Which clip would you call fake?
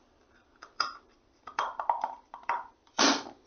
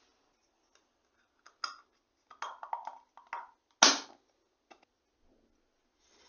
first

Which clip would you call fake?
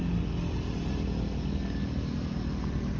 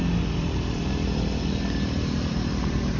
second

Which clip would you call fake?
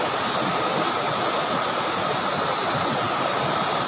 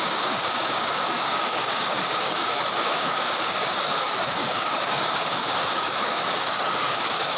second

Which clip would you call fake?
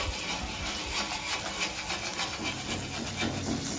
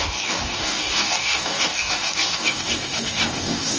second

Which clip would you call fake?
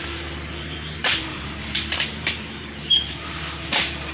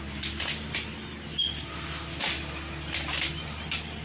first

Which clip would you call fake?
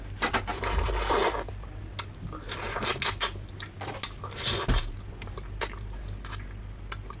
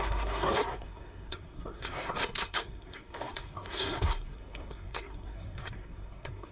second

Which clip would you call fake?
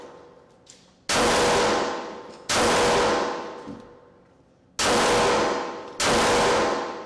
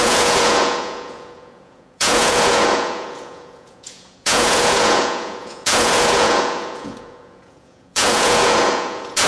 second